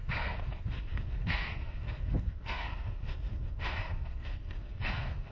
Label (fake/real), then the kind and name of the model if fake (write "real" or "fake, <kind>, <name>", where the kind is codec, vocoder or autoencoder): fake, codec, SNAC